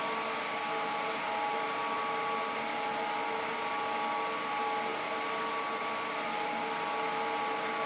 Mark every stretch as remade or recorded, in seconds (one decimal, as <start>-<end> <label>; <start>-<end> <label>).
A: 0.0-7.9 recorded